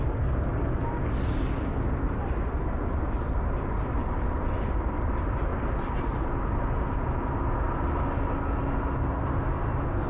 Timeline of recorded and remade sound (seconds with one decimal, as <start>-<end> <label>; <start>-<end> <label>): 0.0-10.1 recorded